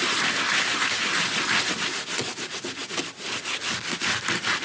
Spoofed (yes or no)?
no